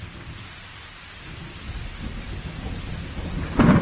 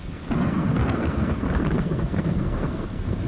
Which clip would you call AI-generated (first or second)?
second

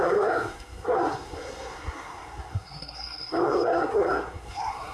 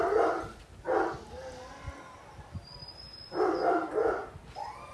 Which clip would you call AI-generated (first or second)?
first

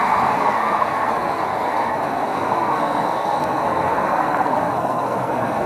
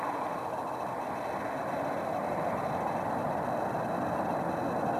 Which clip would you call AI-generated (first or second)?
first